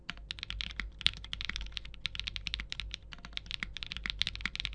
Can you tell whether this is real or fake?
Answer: real